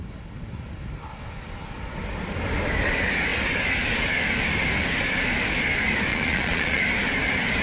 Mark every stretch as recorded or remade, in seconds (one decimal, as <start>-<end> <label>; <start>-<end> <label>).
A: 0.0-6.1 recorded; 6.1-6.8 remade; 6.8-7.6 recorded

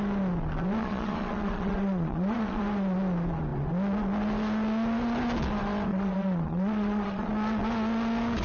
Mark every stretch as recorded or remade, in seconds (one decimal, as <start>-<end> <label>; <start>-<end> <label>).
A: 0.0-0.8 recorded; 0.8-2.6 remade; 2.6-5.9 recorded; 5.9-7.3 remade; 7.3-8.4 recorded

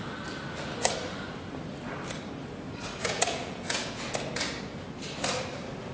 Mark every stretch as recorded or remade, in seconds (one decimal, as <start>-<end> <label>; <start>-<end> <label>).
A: 0.0-3.0 recorded; 3.0-4.1 remade; 4.1-5.9 recorded